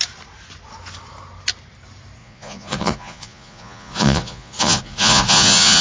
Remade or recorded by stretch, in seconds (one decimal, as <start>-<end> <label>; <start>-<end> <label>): 0.0-2.2 recorded; 2.2-5.8 remade